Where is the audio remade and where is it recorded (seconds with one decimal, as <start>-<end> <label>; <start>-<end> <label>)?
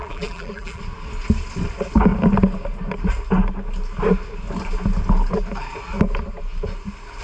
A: 0.0-0.8 remade; 0.8-7.2 recorded